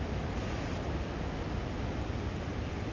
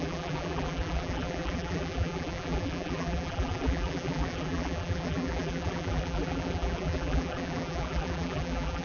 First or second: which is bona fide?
first